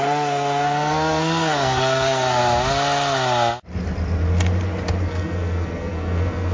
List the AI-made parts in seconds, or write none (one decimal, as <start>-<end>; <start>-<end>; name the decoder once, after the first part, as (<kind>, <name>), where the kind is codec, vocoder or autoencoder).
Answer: 0.0-2.4 (codec, SNAC); 5.0-6.5